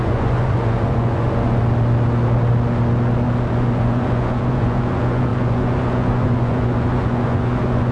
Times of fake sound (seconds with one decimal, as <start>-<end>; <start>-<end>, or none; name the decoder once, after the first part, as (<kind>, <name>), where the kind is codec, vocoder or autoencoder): 0.0-1.6 (vocoder, Vocos); 3.5-7.9